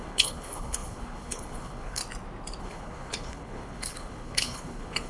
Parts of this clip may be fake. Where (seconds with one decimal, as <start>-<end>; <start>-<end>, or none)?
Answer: 0.0-2.0; 2.6-5.1